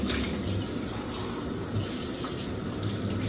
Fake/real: real